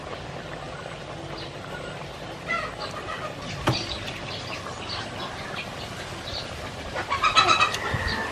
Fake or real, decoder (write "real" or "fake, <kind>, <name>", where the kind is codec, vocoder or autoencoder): real